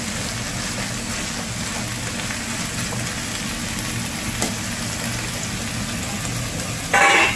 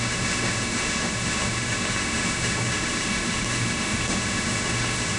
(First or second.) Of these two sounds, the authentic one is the first